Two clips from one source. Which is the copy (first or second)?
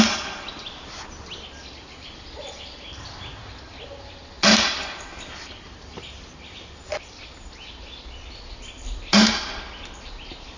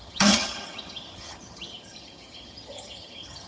second